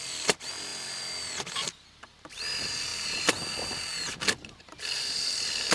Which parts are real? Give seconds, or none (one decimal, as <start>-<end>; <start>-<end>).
0.7-2.2